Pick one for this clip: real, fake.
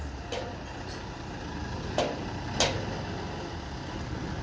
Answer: real